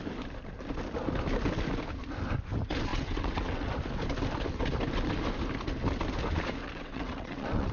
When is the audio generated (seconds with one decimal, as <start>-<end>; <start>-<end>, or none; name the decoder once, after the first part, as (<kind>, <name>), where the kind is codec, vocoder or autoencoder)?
2.9-3.7 (vocoder, WaveNeXt); 6.6-7.7